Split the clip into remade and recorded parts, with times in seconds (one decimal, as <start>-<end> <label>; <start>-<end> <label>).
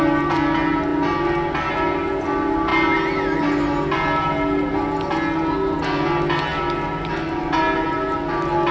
0.0-8.7 recorded